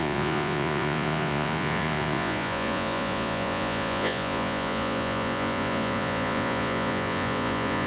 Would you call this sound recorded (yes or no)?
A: no